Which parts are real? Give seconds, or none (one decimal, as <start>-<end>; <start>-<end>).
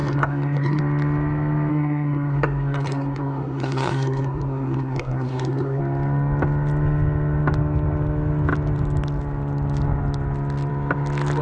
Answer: 0.8-1.7; 5.8-11.4